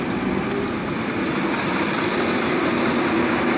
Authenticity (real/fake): real